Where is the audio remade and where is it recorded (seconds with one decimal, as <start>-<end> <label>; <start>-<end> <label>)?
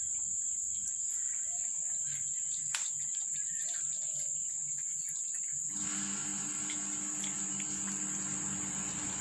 0.0-9.2 recorded